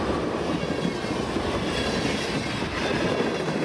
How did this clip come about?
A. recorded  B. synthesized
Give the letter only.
A